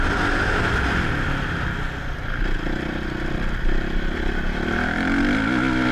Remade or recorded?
recorded